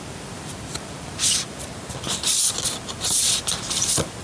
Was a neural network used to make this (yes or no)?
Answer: yes